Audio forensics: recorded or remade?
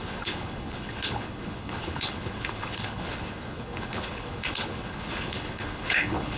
remade